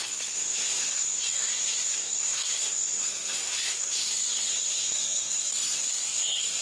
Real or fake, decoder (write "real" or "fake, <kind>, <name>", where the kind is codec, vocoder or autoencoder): fake, codec, SNAC